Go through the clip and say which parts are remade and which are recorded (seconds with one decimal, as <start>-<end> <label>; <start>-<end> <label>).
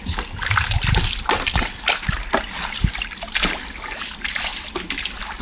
0.0-5.4 recorded